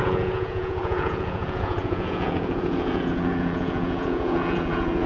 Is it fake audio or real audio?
fake